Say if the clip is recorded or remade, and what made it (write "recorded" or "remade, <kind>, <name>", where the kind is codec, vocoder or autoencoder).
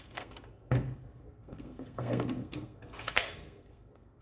remade, codec, SNAC